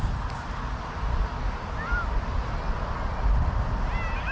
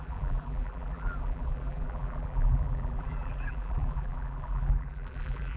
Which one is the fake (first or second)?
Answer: second